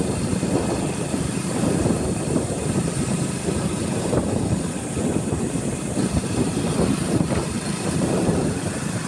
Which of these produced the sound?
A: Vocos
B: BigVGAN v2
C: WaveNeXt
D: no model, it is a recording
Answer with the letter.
B